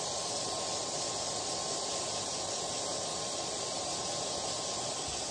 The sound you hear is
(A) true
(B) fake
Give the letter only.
A